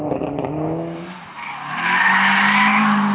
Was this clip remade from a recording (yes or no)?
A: no